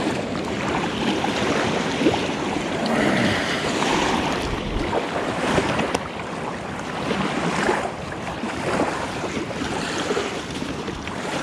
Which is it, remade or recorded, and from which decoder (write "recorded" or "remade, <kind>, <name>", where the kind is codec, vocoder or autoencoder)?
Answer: remade, vocoder, BigVGAN v2